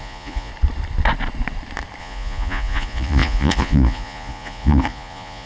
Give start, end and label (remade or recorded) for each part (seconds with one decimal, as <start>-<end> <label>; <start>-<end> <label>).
0.0-0.5 remade; 0.5-2.0 recorded; 2.0-5.5 remade